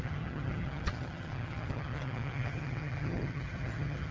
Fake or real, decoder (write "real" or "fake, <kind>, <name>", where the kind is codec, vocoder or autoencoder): fake, vocoder, HiFi-GAN